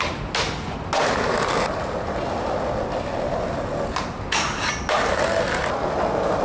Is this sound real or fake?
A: real